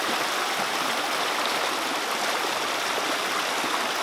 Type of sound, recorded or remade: recorded